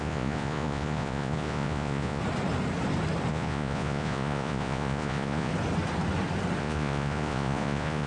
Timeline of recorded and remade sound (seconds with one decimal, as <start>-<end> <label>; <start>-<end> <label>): 0.0-2.2 remade; 2.2-3.3 recorded; 3.3-5.5 remade; 5.5-6.6 recorded; 6.6-8.1 remade